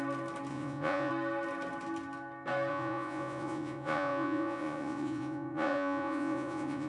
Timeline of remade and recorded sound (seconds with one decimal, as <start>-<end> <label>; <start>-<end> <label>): 0.0-0.5 recorded; 0.5-1.1 remade; 1.1-2.7 recorded; 2.7-6.9 remade